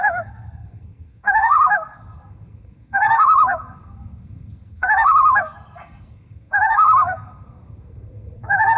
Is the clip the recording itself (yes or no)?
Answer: no